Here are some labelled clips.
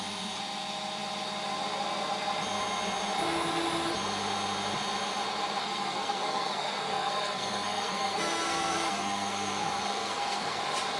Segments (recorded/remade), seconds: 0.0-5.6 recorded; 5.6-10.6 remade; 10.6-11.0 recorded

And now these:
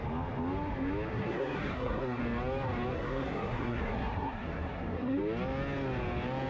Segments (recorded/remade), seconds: 0.0-1.1 recorded; 1.1-2.2 remade; 2.2-2.9 recorded; 2.9-5.2 remade; 5.2-6.5 recorded

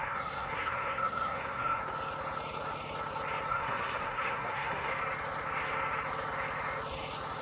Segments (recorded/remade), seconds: 0.0-1.8 remade; 1.8-3.5 recorded; 3.5-4.9 remade; 4.9-7.4 recorded